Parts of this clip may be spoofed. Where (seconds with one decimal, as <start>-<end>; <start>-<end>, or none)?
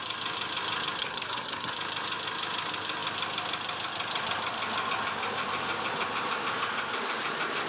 1.0-1.7